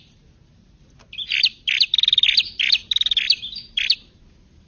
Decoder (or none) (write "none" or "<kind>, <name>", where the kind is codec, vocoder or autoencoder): none